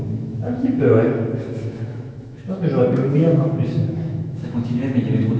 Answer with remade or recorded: remade